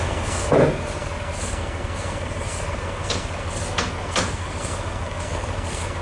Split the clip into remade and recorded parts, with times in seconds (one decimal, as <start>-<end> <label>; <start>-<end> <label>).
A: 0.0-6.0 remade